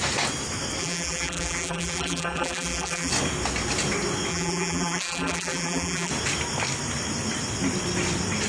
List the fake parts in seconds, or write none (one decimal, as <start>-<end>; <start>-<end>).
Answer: 0.8-3.1; 4.3-6.1